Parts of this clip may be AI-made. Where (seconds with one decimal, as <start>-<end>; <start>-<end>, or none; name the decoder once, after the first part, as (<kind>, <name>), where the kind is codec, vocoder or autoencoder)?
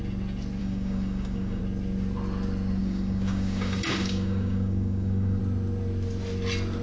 0.6-1.6 (codec, DAC); 2.8-5.4